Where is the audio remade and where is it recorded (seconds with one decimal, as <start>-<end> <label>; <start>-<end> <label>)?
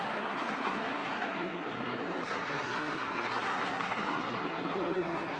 0.0-5.4 remade